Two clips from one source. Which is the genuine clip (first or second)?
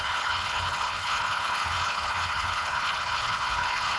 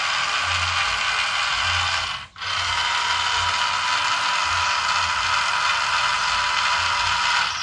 second